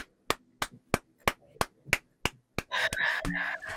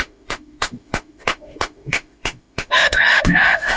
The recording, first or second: first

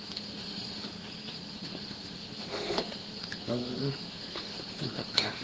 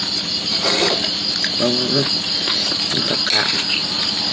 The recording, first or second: second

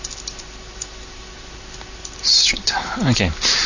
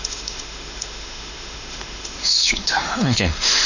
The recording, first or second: first